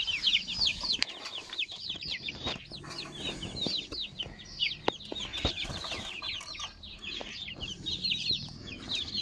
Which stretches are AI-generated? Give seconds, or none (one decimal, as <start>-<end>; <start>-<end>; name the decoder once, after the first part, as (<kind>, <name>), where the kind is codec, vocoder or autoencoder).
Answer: 0.7-2.6 (vocoder, BigVGAN v2); 5.3-7.9